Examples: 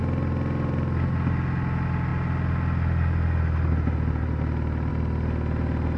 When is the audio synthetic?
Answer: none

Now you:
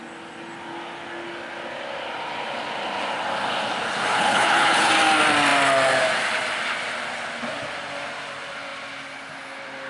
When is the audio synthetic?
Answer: 4.1-4.9 (codec, HILCodec)

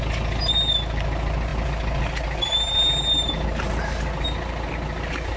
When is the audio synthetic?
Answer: none

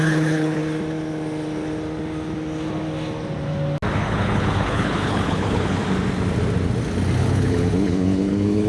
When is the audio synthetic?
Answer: 0.0-0.6 (codec, HILCodec); 3.9-5.8; 7.2-8.7

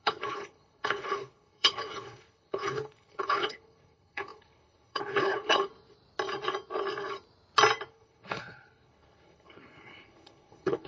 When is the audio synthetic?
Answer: 0.0-5.7 (codec, HILCodec); 7.9-10.9

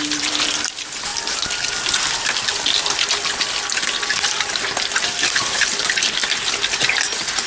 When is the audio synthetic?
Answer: none

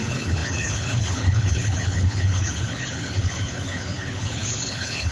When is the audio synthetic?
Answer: 0.0-5.1 (codec, HILCodec)

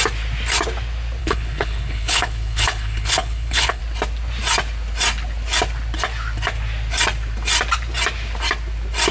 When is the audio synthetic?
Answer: 1.2-3.8 (codec, HILCodec)